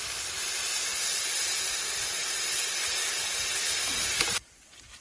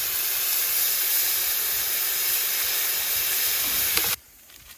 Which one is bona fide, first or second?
first